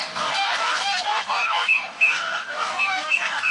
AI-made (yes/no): yes